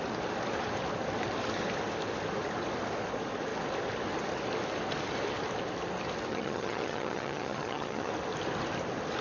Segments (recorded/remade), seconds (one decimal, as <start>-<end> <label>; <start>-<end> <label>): 0.0-6.3 recorded; 6.3-8.1 remade; 8.1-9.2 recorded